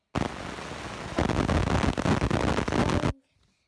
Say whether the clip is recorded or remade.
recorded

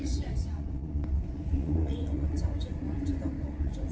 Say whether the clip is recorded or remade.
remade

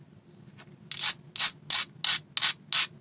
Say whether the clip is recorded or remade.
recorded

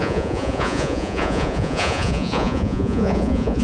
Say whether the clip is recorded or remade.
remade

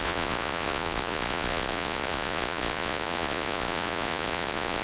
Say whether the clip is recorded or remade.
remade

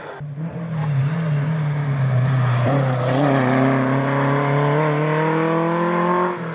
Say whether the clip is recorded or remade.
recorded